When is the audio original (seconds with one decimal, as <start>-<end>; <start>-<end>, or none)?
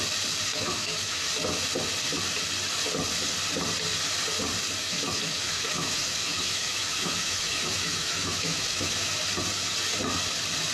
0.0-0.5; 1.3-4.9; 9.2-10.7